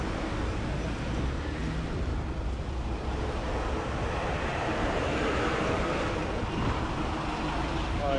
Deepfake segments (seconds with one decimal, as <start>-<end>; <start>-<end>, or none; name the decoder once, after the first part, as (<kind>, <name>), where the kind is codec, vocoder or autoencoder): 2.1-6.1 (vocoder, BigVGAN v2)